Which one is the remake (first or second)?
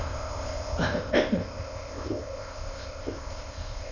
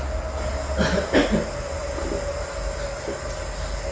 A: first